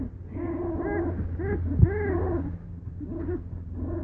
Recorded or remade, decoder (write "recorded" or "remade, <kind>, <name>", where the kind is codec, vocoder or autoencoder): recorded